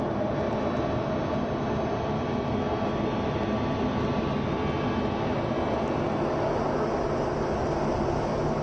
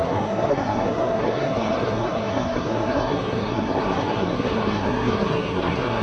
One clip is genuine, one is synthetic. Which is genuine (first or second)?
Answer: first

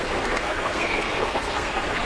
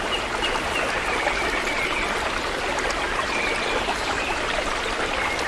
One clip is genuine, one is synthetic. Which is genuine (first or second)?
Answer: second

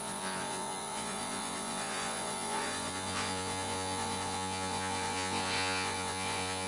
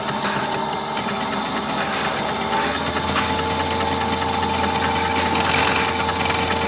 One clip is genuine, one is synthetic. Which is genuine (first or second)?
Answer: second